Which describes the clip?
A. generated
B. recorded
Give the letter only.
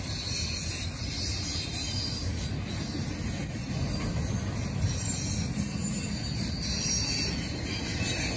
B